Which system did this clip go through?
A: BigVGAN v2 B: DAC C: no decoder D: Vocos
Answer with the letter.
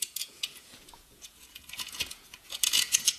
D